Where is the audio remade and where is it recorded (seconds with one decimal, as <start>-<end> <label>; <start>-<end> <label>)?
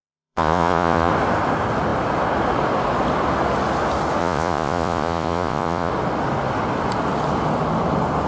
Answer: 0.0-1.1 remade; 1.1-4.2 recorded; 4.2-5.9 remade; 5.9-8.3 recorded